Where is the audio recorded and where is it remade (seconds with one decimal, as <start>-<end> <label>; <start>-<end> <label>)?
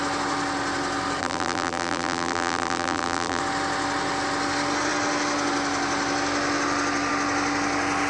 0.0-1.2 recorded; 1.2-3.4 remade; 3.4-8.1 recorded